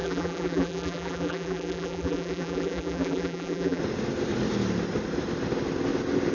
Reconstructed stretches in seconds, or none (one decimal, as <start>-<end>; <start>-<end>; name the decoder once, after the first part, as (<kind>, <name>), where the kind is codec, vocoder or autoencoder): 0.0-3.8 (vocoder, BigVGAN v2)